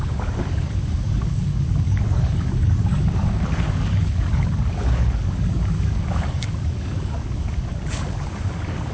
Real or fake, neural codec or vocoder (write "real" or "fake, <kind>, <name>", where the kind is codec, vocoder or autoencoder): fake, codec, DAC